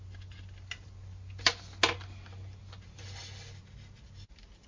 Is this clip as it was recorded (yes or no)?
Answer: yes